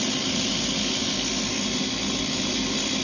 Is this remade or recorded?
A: recorded